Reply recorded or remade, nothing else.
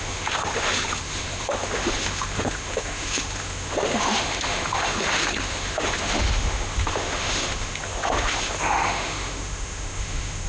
remade